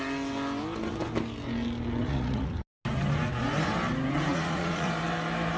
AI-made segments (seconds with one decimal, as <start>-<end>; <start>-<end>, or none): 2.0-2.5; 4.3-4.9